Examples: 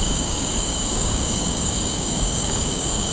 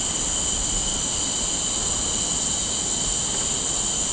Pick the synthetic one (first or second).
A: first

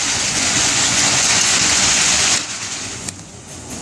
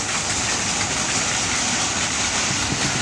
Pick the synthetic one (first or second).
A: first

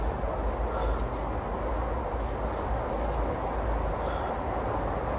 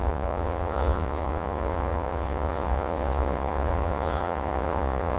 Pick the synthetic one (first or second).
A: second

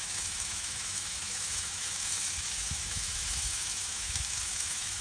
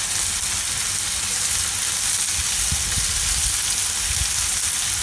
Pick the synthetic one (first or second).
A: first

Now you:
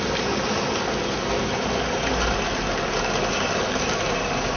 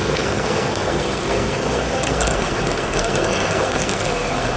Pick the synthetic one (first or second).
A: second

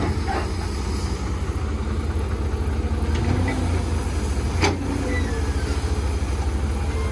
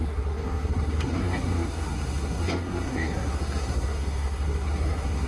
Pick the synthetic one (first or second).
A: second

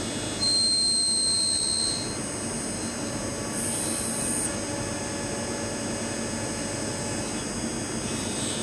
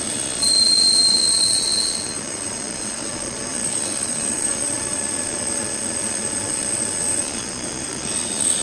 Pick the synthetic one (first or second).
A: second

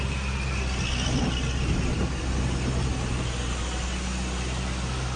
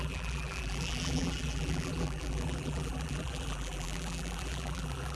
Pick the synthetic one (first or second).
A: second